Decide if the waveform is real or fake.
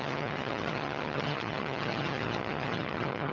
fake